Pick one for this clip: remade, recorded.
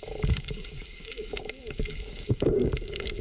remade